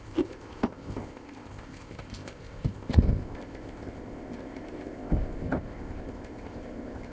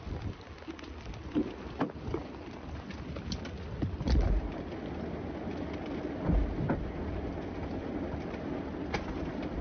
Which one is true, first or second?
second